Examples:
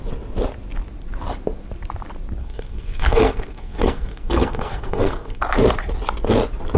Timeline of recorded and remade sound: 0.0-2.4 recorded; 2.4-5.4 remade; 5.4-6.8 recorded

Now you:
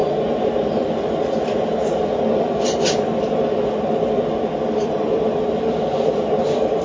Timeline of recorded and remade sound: 0.0-6.8 recorded

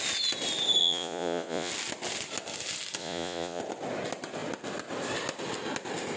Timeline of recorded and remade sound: 0.0-0.8 recorded; 0.8-1.7 remade; 1.7-3.0 recorded; 3.0-3.6 remade; 3.6-6.2 recorded

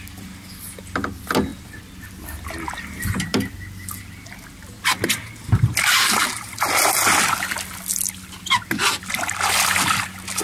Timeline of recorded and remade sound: 0.0-3.3 recorded; 3.3-4.0 remade; 4.0-10.4 recorded

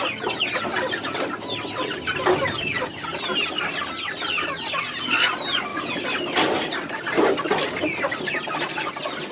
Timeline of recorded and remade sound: 0.0-0.7 recorded; 0.7-4.7 remade; 4.7-5.7 recorded; 5.7-8.9 remade; 8.9-9.3 recorded